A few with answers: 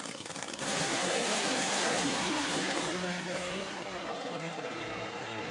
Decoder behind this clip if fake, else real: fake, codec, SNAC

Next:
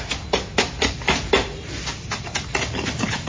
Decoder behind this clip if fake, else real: real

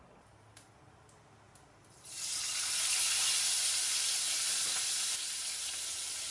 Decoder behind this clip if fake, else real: real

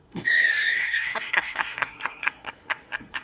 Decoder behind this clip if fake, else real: fake, codec, SNAC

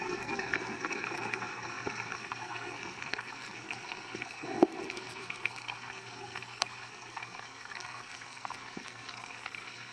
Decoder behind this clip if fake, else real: fake, codec, SNAC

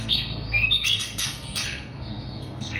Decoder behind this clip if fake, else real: fake, codec, SNAC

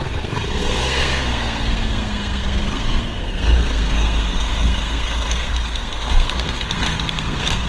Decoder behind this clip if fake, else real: fake, codec, SNAC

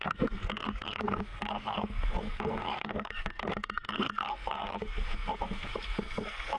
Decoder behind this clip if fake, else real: fake, codec, SNAC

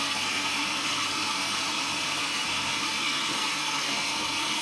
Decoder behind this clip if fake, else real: fake, codec, SNAC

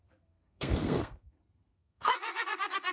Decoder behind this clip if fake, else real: fake, codec, SNAC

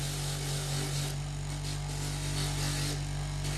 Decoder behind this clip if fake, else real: real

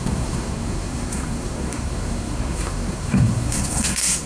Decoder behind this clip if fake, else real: fake, codec, SNAC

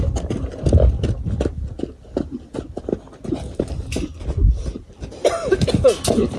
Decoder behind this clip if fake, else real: real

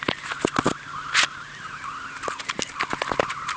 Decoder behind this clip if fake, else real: real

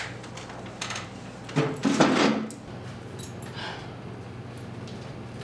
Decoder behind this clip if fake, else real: real